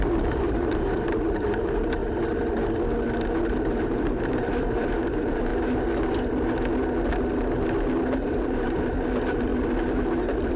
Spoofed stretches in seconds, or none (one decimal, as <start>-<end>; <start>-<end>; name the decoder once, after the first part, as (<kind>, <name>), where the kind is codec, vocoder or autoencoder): 0.0-2.0 (vocoder, BigVGAN v2); 3.5-5.5; 8.1-10.6